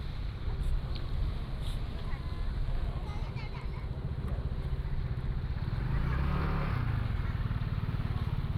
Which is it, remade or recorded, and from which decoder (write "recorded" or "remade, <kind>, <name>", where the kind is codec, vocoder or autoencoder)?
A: recorded